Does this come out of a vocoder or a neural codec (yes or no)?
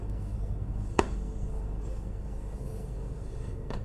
yes